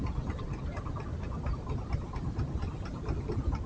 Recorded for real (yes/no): yes